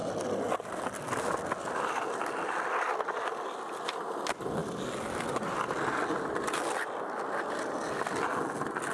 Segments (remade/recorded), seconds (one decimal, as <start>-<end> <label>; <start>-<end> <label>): 0.0-8.9 recorded